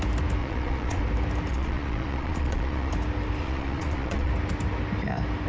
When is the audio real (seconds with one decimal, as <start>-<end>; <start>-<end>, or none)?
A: 0.0-0.4; 1.0-1.5; 2.9-3.4; 4.3-5.5